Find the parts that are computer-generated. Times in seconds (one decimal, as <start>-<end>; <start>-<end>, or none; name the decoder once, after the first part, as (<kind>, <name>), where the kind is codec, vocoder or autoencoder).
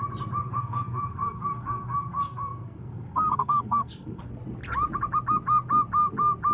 0.4-4.3 (codec, SNAC)